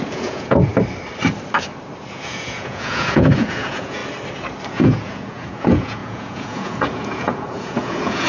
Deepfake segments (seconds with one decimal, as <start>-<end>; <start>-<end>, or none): 0.0-0.7; 2.1-4.0; 4.7-8.3